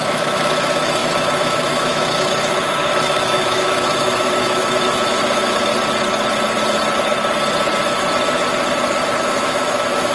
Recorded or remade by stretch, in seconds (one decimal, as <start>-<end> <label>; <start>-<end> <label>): 0.0-5.7 remade; 5.7-9.2 recorded; 9.2-10.1 remade